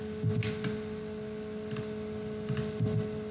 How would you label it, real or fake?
real